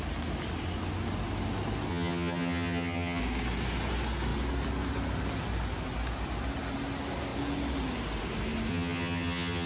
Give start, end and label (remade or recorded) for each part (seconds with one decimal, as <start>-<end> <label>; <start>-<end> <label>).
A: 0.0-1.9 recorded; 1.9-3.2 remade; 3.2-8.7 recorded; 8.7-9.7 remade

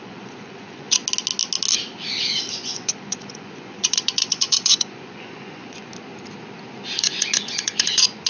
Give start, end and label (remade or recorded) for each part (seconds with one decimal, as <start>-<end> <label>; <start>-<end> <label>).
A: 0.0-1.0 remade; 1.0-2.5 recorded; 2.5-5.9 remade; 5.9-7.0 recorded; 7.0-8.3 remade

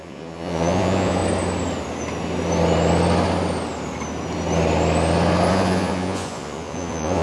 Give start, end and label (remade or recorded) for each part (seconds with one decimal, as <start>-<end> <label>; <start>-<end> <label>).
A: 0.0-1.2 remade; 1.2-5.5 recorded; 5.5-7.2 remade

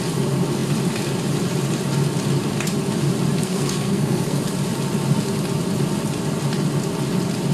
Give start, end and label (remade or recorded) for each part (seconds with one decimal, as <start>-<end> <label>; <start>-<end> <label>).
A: 0.0-3.4 recorded; 3.4-4.4 remade; 4.4-7.5 recorded

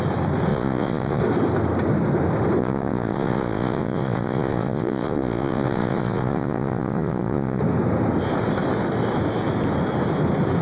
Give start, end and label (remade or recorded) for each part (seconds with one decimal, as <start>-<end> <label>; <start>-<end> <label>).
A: 0.0-0.5 recorded; 0.5-1.2 remade; 1.2-2.6 recorded; 2.6-7.6 remade; 7.6-10.6 recorded